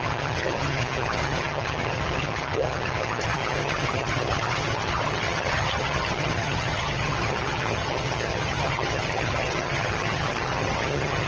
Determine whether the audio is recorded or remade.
remade